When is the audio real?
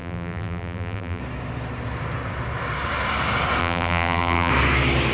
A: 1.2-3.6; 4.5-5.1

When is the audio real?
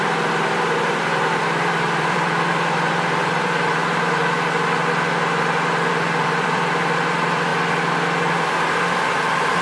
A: 4.2-5.8; 7.5-8.4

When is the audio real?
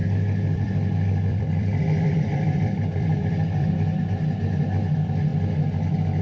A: 3.7-6.2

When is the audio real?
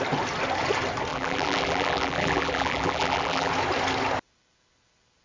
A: 0.0-1.1; 3.5-5.2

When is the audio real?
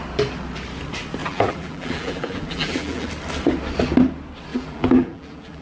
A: 0.0-1.2; 3.1-4.5